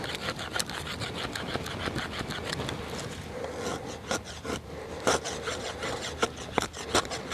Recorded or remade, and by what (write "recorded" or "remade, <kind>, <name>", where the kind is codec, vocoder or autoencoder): recorded